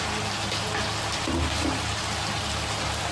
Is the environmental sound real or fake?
real